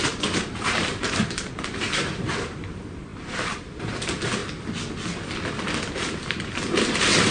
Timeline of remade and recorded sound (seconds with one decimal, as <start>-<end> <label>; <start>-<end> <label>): 0.0-4.4 remade; 4.4-6.0 recorded; 6.0-7.3 remade